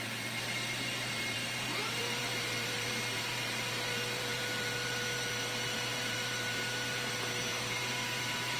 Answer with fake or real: fake